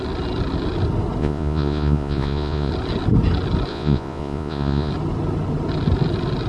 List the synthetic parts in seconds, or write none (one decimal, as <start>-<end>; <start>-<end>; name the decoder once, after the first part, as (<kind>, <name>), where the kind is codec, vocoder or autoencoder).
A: 1.2-2.7 (vocoder, Vocos); 3.7-4.9